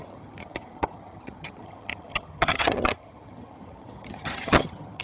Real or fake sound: fake